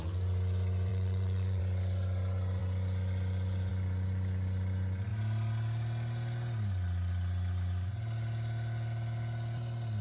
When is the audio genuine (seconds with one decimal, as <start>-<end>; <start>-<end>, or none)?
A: 0.0-0.9; 1.6-10.0